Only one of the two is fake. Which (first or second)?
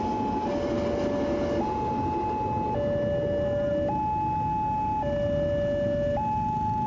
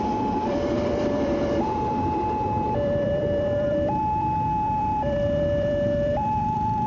second